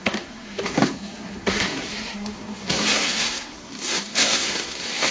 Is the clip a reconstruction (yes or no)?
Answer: yes